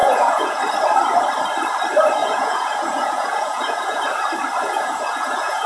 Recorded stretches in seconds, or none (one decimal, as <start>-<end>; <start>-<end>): 0.6-2.2; 4.0-4.6